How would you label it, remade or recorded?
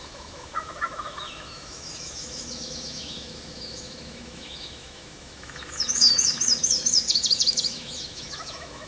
remade